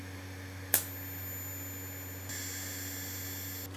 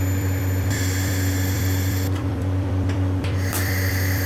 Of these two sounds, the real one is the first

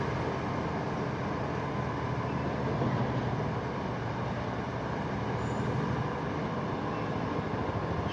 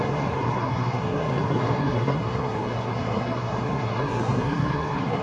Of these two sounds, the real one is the first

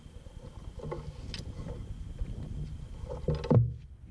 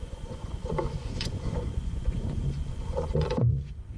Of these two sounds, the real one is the first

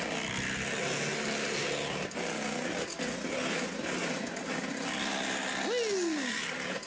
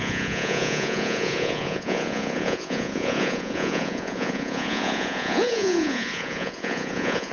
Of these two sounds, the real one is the first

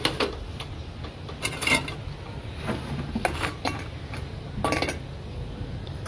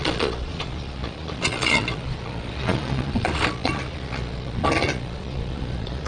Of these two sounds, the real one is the first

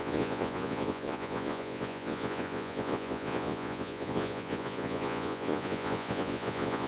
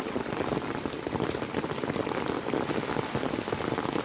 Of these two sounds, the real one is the second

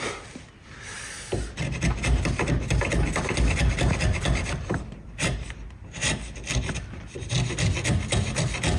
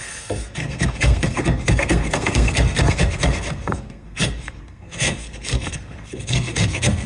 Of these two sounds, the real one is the first